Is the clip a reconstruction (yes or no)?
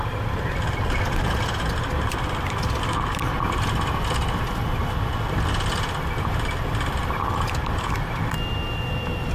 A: no